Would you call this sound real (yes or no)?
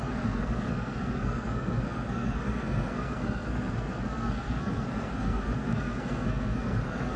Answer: no